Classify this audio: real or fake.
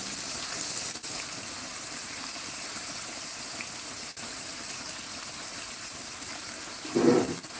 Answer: fake